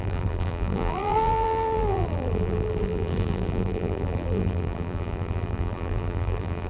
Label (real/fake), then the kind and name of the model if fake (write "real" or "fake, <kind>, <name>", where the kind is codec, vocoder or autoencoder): fake, vocoder, BigVGAN v2